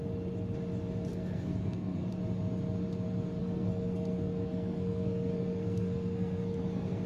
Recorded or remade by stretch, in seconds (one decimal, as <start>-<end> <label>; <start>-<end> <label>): 0.0-1.1 recorded; 1.1-2.1 remade; 2.1-3.4 recorded; 3.4-7.1 remade